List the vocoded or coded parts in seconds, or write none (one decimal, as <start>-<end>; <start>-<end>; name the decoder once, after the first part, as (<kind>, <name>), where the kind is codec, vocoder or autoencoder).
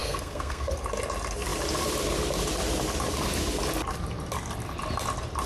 0.0-0.7 (codec, SNAC)